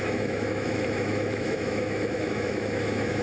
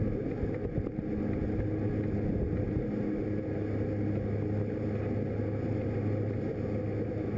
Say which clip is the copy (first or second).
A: first